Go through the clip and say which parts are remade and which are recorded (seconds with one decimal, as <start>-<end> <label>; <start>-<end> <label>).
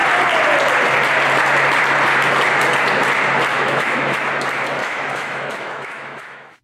0.0-3.5 recorded; 3.5-4.2 remade; 4.2-4.8 recorded; 4.8-6.6 remade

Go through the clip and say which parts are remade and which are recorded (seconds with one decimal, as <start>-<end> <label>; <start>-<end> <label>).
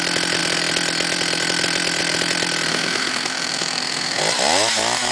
0.0-2.7 recorded; 2.7-4.2 remade; 4.2-5.1 recorded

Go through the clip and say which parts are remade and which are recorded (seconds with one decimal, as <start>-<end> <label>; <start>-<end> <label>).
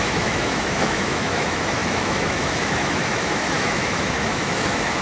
0.0-5.0 remade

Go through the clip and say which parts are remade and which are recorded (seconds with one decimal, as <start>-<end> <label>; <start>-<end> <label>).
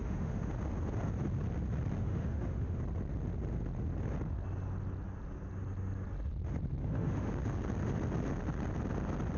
0.0-0.5 remade; 0.5-2.0 recorded; 2.0-2.8 remade; 2.8-6.8 recorded; 6.8-7.3 remade; 7.3-9.4 recorded